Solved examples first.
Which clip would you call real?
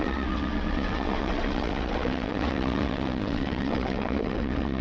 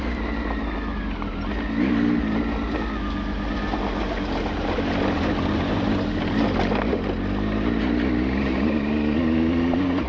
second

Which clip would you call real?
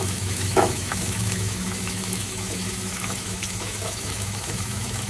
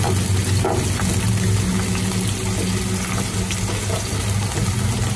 second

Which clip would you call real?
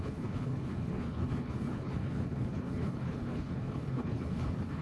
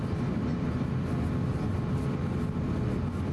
second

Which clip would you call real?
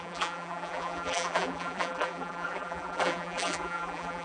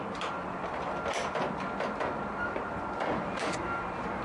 second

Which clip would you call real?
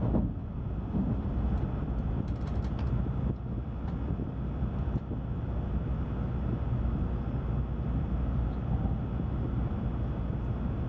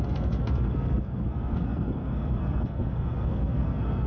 first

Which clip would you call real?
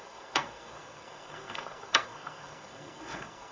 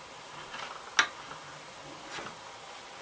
second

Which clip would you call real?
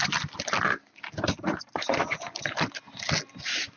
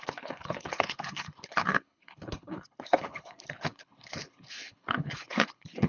first